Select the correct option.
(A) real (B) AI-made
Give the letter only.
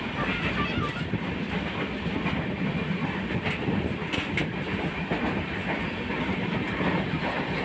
B